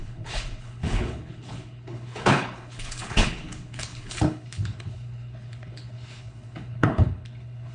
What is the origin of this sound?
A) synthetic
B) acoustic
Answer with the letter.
A